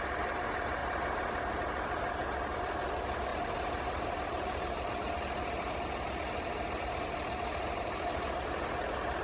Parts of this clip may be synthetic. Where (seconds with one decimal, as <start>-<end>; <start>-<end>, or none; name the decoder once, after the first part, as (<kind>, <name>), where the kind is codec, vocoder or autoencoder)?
none